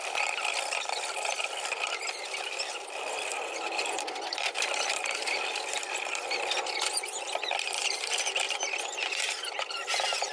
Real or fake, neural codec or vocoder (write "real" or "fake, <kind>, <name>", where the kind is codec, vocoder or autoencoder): real